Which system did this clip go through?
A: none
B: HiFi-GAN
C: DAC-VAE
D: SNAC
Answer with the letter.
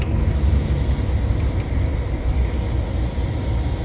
A